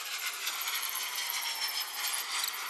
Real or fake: real